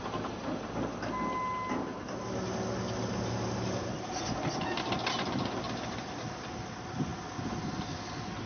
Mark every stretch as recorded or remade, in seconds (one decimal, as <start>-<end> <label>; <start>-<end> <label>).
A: 0.0-8.5 recorded